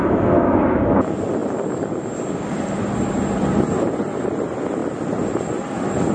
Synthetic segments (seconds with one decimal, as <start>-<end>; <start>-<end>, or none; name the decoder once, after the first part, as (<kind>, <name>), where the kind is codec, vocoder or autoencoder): none